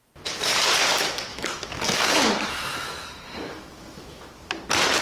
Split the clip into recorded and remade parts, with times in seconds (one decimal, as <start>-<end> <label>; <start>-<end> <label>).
0.0-1.3 recorded; 1.3-4.3 remade; 4.3-5.0 recorded